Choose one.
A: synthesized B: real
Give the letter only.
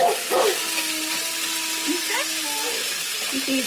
B